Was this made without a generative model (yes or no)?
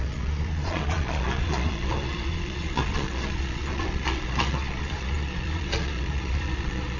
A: no